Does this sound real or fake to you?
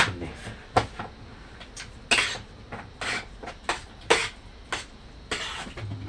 real